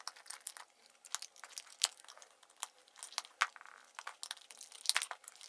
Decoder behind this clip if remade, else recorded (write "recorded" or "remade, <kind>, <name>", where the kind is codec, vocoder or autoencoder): recorded